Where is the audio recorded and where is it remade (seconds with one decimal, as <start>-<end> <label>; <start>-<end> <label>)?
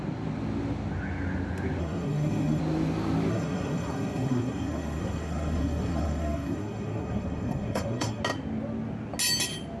0.0-1.8 recorded; 1.8-2.6 remade; 2.6-3.3 recorded; 3.3-8.2 remade; 8.2-9.8 recorded